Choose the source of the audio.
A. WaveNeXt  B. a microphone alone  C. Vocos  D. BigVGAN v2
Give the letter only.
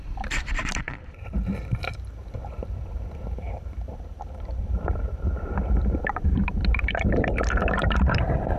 D